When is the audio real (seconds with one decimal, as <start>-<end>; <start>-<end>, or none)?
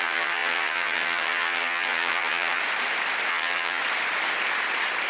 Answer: 2.6-3.3; 3.8-5.1